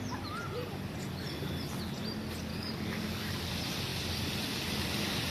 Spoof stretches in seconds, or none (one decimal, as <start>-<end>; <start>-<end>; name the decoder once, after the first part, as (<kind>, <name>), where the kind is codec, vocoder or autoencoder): 2.5-3.4 (codec, DAC)